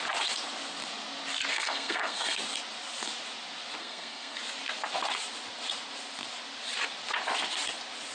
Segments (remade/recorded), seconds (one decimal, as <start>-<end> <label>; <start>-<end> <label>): 0.0-1.5 recorded; 1.5-2.4 remade; 2.4-3.8 recorded; 3.8-4.4 remade; 4.4-8.1 recorded

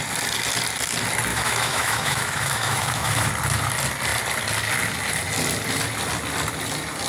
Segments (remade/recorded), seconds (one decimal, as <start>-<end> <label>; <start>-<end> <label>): 0.0-1.3 recorded; 1.3-3.3 remade; 3.3-7.1 recorded

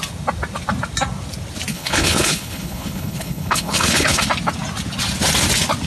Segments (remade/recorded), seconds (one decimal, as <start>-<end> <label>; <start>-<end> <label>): 0.0-1.7 recorded; 1.7-4.2 remade; 4.2-5.9 recorded

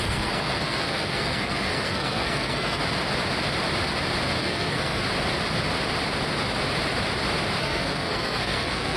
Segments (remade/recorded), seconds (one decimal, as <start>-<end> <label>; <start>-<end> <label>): 0.0-2.8 remade; 2.8-4.4 recorded; 4.4-5.0 remade; 5.0-7.6 recorded; 7.6-9.0 remade

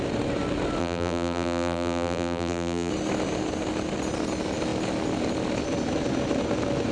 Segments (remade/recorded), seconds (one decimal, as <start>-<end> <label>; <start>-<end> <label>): 0.0-0.8 recorded; 0.8-2.9 remade; 2.9-6.9 recorded

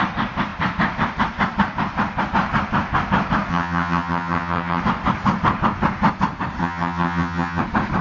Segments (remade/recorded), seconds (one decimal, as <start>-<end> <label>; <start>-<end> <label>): 0.0-3.5 recorded; 3.5-4.8 remade; 4.8-6.6 recorded; 6.6-7.6 remade; 7.6-8.0 recorded

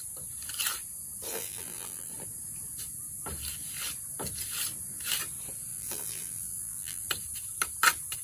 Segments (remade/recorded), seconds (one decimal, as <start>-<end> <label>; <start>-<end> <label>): 0.0-1.3 recorded; 1.3-2.1 remade; 2.1-5.7 recorded; 5.7-7.1 remade; 7.1-8.2 recorded

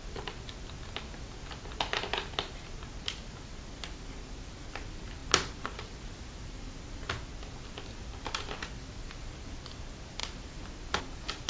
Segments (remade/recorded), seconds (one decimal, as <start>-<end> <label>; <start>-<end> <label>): 0.0-11.5 recorded